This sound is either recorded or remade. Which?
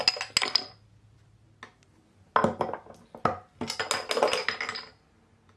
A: recorded